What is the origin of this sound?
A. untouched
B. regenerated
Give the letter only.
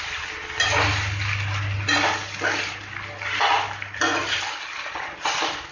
A